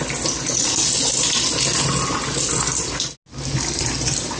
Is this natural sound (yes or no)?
yes